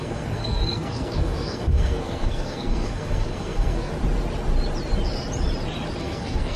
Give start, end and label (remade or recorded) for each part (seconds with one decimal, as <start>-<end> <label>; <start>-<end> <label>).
0.0-3.9 remade; 3.9-6.0 recorded; 6.0-6.6 remade